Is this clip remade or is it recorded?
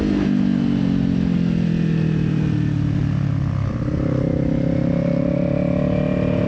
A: recorded